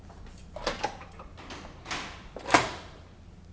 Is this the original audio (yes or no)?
yes